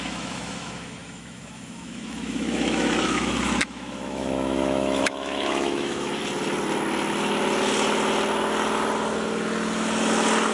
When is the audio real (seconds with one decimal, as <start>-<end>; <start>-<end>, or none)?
6.2-10.5